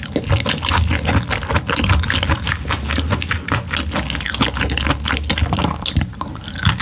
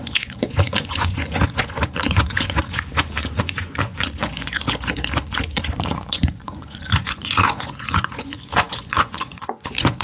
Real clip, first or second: first